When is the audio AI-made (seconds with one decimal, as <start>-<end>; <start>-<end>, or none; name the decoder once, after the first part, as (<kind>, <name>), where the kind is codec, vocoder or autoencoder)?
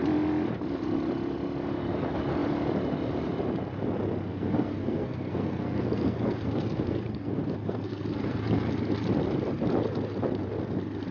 4.3-8.7 (codec, SNAC)